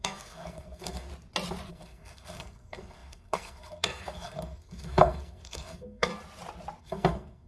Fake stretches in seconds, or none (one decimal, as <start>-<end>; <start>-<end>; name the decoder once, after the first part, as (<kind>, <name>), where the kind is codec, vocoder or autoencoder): 0.0-1.1 (codec, SNAC); 1.7-6.1; 6.8-7.5